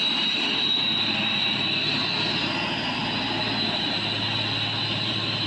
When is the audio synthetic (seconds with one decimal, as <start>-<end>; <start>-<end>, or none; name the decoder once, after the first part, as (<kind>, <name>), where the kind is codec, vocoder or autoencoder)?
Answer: 0.0-2.0 (vocoder, BigVGAN v2); 2.5-3.0; 4.8-5.5